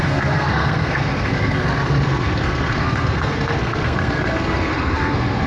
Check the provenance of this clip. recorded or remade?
remade